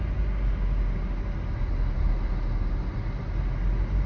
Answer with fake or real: real